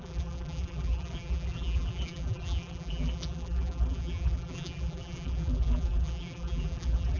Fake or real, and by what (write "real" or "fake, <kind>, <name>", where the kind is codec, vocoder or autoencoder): fake, vocoder, BigVGAN v2